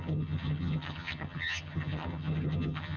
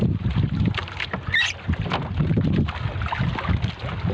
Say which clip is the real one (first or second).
second